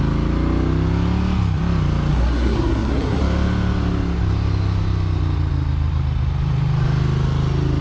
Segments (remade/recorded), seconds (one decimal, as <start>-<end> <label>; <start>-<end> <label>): 0.0-2.1 recorded; 2.1-3.2 remade; 3.2-7.8 recorded